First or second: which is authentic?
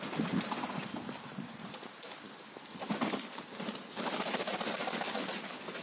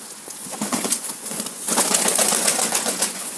first